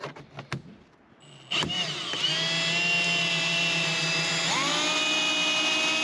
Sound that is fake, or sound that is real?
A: real